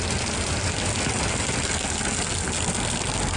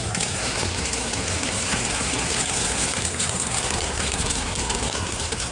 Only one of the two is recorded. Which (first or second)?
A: first